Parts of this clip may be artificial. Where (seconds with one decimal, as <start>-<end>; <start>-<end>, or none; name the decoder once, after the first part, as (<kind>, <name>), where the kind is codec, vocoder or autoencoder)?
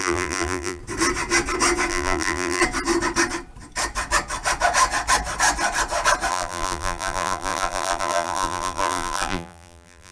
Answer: 0.0-0.8 (vocoder, BigVGAN v2); 1.9-2.6; 6.3-10.1